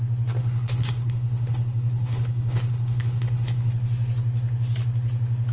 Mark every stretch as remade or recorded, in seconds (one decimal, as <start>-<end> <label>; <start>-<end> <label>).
0.0-0.4 recorded; 0.4-3.7 remade; 3.7-5.5 recorded